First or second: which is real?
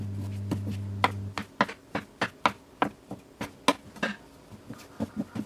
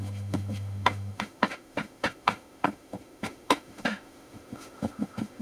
first